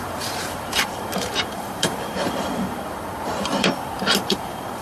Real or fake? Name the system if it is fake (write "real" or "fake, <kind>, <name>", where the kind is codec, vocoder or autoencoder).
fake, vocoder, BigVGAN v2